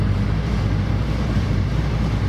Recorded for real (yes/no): no